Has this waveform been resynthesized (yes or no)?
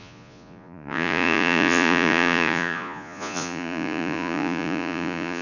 yes